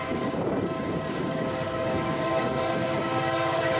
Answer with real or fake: fake